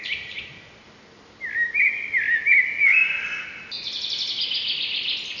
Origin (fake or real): real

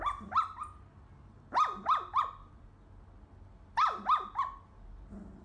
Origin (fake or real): real